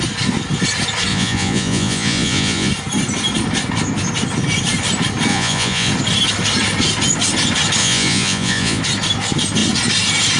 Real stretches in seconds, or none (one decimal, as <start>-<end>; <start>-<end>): 0.0-1.1; 2.7-5.3; 5.9-7.8; 8.8-10.4